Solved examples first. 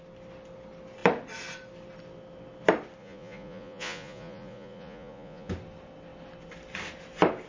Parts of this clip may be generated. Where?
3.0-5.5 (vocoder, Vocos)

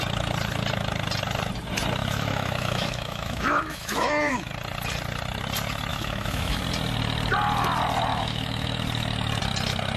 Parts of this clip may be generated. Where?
2.0-4.5 (autoencoder, DAC-VAE); 5.9-6.6; 8.1-8.8

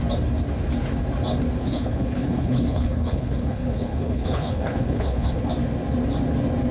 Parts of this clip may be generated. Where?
1.6-5.5 (codec, HILCodec)

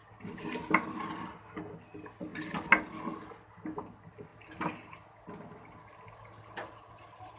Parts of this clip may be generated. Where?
none

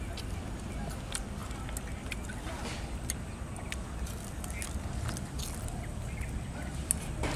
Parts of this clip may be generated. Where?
none

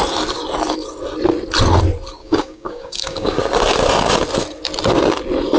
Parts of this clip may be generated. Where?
2.2-3.4 (codec, DAC)